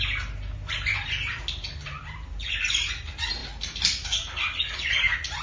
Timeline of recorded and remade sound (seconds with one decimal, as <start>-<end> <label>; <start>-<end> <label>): 0.0-5.4 recorded